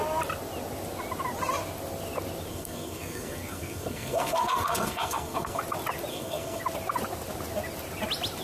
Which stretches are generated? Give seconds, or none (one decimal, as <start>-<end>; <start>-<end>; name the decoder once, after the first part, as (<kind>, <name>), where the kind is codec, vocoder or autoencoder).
2.5-5.6 (codec, SNAC); 6.1-6.6